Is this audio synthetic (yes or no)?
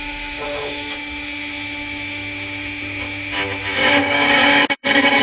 yes